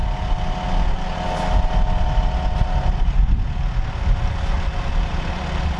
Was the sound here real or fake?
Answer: real